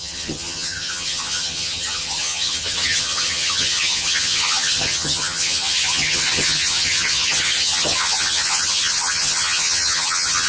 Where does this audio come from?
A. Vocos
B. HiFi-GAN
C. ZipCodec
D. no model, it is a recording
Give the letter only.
B